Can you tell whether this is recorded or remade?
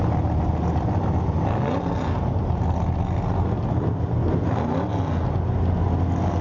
recorded